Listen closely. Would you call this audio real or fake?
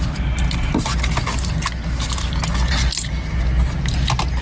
real